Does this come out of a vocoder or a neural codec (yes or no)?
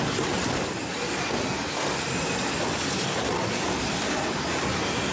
no